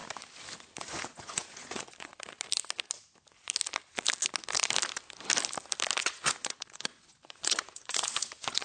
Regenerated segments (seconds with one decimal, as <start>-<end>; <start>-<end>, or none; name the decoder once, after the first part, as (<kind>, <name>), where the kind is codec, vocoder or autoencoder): 0.8-2.1 (vocoder, Vocos); 6.0-8.6